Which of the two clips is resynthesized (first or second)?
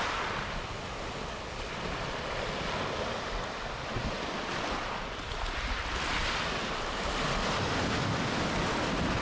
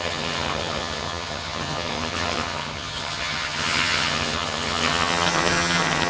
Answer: second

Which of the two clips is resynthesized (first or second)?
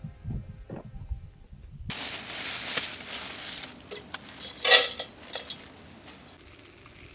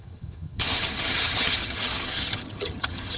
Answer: second